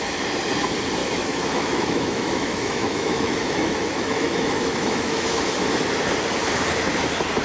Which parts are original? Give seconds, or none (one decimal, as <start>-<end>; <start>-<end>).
0.0-1.0; 5.4-7.4